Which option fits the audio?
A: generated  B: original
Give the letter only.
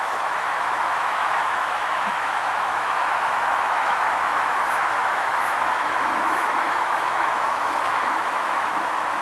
A